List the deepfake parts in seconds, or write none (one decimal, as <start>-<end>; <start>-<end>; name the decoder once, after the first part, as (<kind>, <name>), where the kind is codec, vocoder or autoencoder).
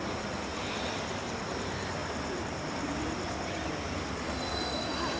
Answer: 0.0-0.5 (vocoder, BigVGAN v2); 1.2-2.0